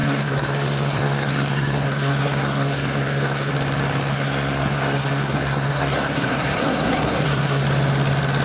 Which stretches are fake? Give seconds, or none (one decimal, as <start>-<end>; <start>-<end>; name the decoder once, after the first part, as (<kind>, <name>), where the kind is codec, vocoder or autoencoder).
0.0-3.5 (codec, SNAC); 4.1-7.6